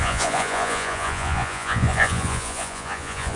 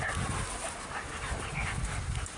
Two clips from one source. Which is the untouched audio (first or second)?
second